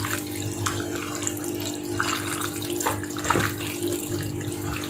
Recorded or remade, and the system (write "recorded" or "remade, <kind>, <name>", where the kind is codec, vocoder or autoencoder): recorded